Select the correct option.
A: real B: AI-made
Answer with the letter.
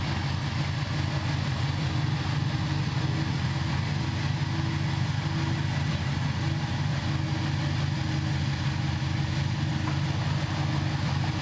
A